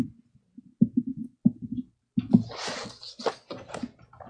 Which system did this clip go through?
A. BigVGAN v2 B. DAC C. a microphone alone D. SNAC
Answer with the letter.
C